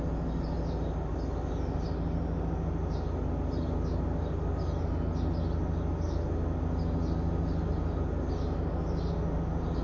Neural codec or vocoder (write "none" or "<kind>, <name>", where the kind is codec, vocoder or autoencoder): none